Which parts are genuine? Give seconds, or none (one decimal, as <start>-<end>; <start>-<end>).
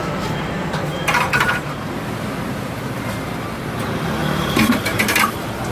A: 3.1-4.2; 5.3-5.7